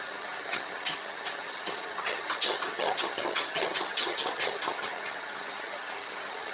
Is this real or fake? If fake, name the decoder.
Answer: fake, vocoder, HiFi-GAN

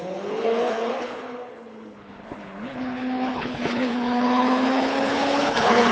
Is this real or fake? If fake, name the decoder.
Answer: fake, codec, HILCodec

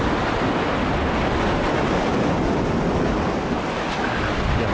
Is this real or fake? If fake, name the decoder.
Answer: real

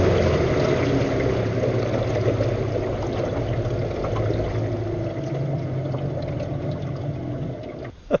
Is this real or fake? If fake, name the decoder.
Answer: real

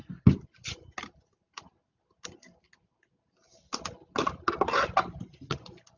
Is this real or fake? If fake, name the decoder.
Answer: real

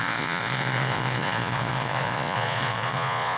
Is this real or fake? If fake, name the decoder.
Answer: fake, vocoder, Vocos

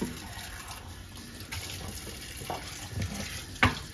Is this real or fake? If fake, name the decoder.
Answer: real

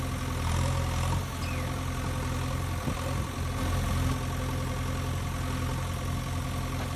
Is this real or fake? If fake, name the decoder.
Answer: real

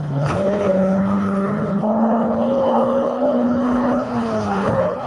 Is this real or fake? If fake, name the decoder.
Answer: fake, codec, HILCodec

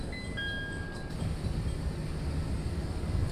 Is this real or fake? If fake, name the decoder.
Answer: real